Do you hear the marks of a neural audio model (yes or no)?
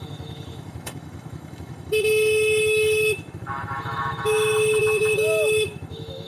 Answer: yes